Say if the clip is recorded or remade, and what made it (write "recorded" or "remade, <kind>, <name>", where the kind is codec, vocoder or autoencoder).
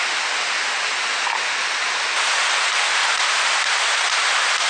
recorded